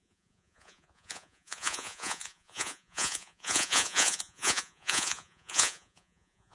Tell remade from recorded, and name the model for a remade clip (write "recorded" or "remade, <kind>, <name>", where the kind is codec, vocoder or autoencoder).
remade, vocoder, Vocos